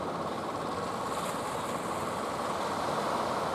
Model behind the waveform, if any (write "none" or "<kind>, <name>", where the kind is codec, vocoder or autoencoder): none